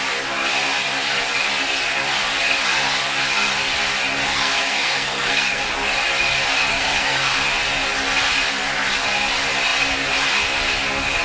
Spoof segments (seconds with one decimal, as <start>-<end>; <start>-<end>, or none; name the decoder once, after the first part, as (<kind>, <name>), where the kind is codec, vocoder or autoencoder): 4.2-5.7 (codec, SNAC); 6.7-7.3